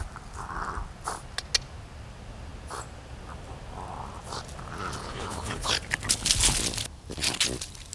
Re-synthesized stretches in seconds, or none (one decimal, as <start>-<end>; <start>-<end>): 5.0-5.7